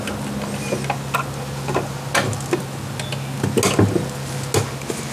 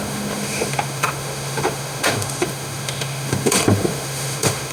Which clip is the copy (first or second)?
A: second